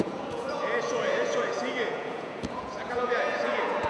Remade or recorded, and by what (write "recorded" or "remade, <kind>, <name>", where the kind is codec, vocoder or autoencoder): remade, vocoder, Vocos